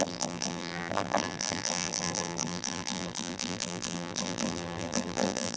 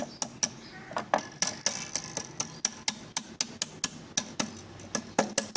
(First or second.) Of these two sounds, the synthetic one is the first